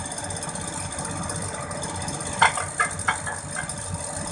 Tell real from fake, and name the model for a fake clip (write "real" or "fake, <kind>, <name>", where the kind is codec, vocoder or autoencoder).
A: real